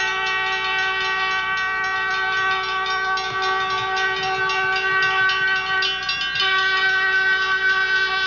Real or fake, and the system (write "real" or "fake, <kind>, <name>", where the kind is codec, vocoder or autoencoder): real